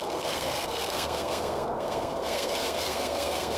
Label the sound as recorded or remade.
remade